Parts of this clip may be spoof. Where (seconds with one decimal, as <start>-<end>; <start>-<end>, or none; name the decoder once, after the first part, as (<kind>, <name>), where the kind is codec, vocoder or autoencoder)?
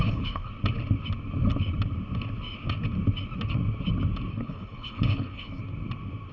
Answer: 0.0-0.5 (codec, HILCodec); 4.3-5.6